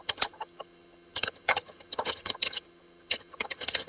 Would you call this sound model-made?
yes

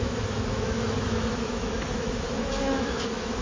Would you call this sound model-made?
yes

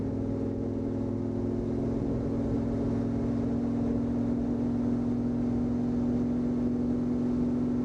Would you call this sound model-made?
no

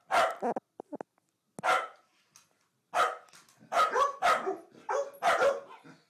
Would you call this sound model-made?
no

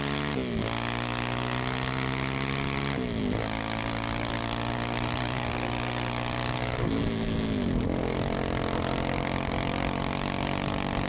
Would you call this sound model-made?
no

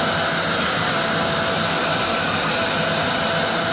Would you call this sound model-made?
no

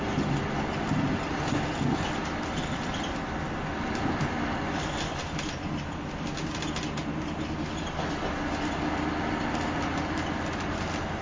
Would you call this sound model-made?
no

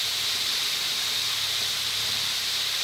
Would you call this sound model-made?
yes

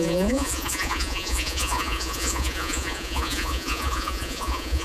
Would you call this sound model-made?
yes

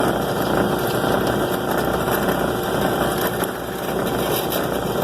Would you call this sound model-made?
no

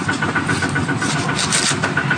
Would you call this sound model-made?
no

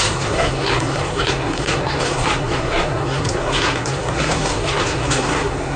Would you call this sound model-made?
yes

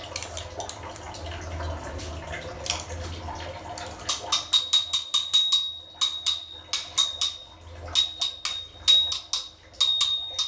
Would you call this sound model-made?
no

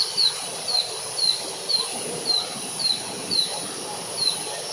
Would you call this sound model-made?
no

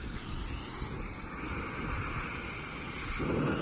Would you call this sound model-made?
no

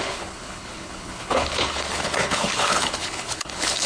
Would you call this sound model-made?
yes